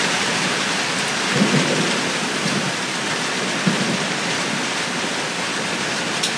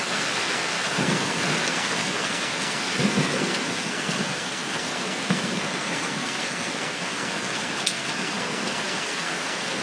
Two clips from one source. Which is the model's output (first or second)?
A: second